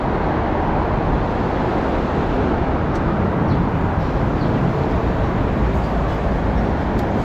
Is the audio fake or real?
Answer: real